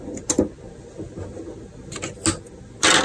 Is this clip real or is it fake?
real